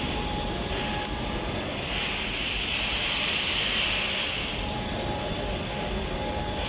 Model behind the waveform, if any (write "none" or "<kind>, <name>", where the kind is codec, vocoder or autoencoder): none